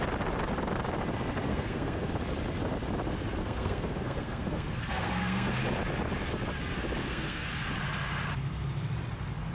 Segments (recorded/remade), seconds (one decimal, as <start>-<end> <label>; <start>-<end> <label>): 0.0-1.5 recorded; 1.5-2.2 remade; 2.2-3.4 recorded; 3.4-5.5 remade; 5.5-7.0 recorded; 7.0-7.5 remade; 7.5-9.5 recorded